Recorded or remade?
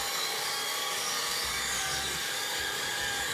remade